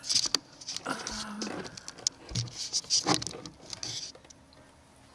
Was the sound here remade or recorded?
recorded